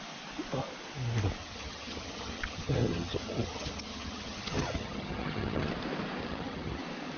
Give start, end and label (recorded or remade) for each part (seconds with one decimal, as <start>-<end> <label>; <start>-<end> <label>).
0.0-1.4 recorded; 1.4-5.7 remade; 5.7-6.2 recorded; 6.2-6.8 remade; 6.8-7.2 recorded